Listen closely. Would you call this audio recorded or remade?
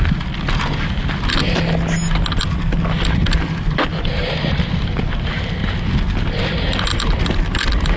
recorded